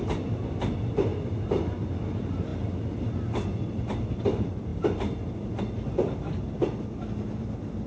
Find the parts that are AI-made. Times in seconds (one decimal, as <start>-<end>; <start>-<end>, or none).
1.1-1.7; 4.7-5.6